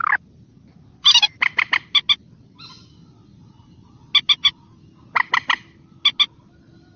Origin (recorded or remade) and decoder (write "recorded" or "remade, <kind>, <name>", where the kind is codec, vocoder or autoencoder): recorded